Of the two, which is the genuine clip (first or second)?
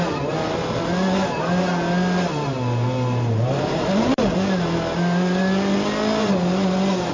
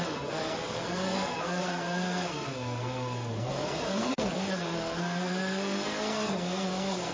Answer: first